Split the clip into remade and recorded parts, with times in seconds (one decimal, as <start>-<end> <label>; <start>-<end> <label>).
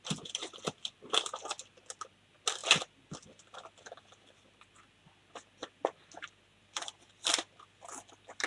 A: 0.0-8.5 recorded